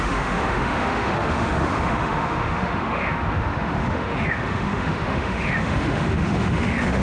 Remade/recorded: remade